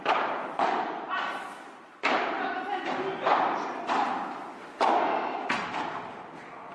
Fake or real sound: real